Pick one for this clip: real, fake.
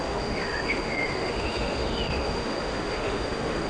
fake